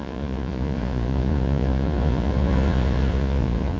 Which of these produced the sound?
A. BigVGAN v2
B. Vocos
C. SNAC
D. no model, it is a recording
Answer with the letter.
B